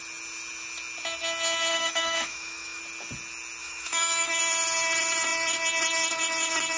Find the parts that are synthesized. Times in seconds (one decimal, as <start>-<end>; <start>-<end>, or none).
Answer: 1.7-2.8; 3.6-4.4